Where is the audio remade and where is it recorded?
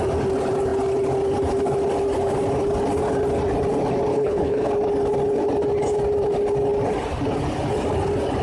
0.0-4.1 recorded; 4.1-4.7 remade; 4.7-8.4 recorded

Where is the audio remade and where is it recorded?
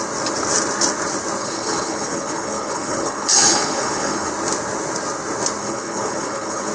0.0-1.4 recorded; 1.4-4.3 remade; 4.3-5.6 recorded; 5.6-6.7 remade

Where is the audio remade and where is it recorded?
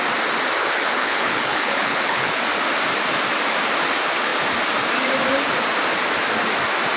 0.0-0.6 recorded; 0.6-2.4 remade; 2.4-7.0 recorded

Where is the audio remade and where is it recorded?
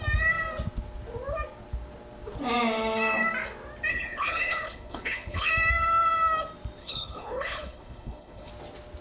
0.0-3.9 recorded; 3.9-5.5 remade; 5.5-6.8 recorded; 6.8-8.5 remade; 8.5-9.0 recorded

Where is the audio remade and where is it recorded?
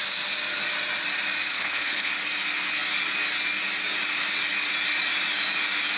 0.0-1.5 recorded; 1.5-2.1 remade; 2.1-6.0 recorded